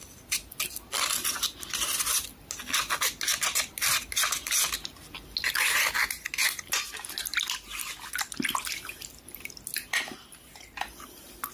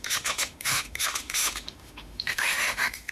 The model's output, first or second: second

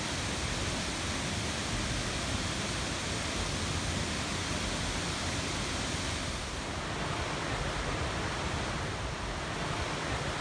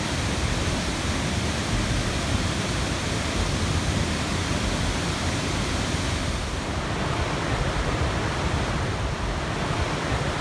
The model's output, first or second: second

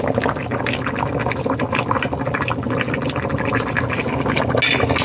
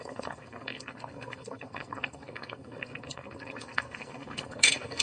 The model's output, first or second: second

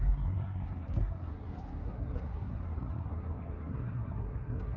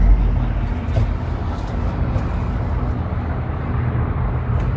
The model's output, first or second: first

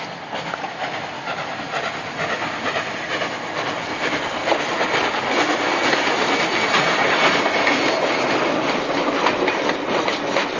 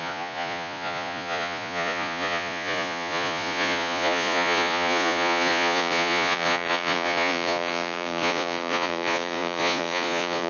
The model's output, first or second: second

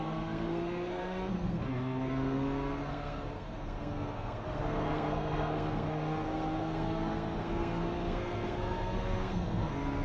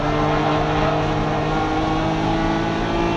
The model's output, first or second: first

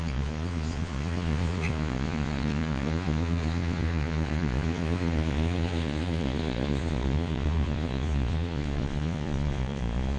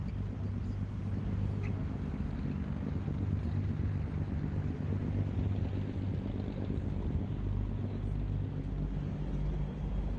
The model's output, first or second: first